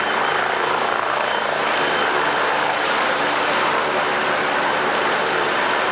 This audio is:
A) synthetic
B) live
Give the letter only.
A